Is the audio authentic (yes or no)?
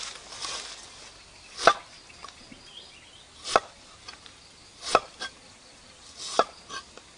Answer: yes